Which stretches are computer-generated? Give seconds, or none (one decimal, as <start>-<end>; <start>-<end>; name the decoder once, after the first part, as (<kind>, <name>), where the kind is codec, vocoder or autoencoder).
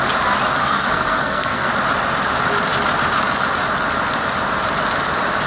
0.6-1.7 (codec, SNAC)